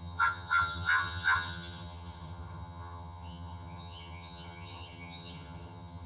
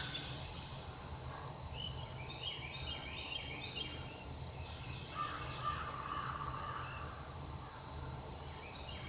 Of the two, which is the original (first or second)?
second